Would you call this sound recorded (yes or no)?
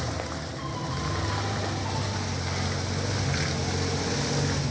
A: yes